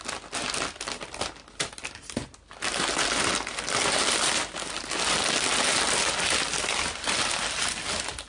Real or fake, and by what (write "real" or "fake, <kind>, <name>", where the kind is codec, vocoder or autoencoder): real